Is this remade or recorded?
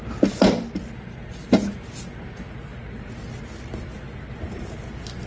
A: recorded